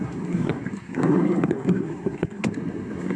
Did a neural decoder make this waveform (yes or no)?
yes